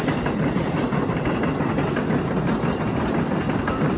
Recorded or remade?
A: recorded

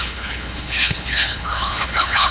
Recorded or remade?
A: remade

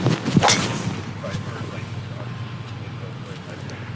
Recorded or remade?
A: recorded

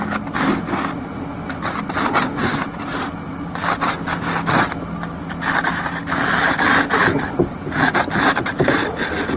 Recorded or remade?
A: recorded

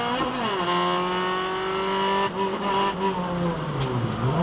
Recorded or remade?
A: recorded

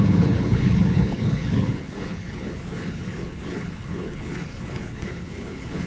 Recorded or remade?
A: remade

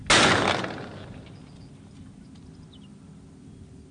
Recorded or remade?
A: recorded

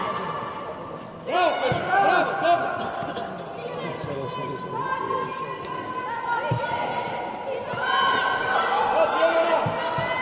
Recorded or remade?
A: recorded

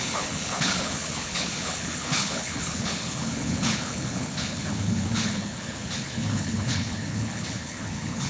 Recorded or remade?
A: remade